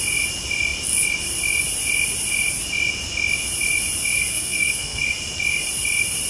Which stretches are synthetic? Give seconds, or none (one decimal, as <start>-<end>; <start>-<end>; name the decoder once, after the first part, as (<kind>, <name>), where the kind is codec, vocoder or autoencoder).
4.3-5.0 (codec, SNAC)